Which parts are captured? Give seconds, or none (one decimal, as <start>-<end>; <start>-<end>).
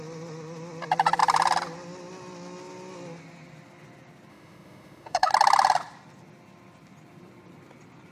0.0-4.3; 5.3-8.1